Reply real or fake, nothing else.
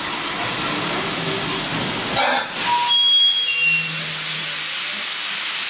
real